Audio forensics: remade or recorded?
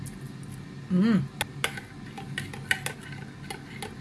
recorded